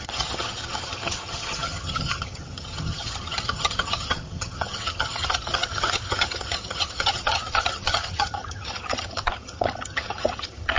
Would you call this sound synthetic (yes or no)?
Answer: yes